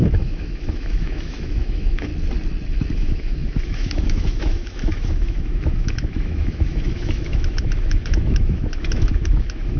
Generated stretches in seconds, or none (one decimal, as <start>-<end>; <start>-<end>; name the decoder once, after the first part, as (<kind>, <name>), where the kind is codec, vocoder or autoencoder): 0.0-2.1 (autoencoder, DAC-VAE); 2.9-9.8